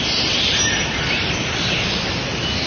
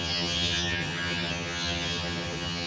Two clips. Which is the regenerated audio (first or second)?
second